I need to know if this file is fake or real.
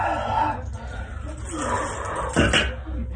real